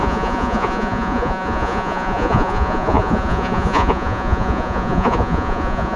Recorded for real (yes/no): no